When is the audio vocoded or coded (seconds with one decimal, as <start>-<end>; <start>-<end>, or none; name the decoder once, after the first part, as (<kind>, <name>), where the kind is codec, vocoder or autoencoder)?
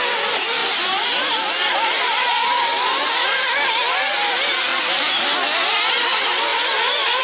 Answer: none